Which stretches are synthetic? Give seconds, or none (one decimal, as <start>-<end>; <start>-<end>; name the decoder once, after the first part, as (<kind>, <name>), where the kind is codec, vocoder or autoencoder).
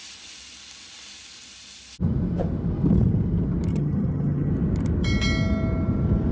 3.7-4.5 (vocoder, HiFi-GAN)